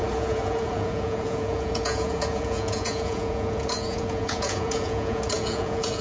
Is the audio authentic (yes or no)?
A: no